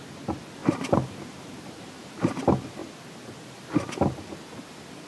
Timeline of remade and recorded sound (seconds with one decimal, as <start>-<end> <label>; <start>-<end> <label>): 0.0-0.6 recorded; 0.6-2.4 remade; 2.4-5.1 recorded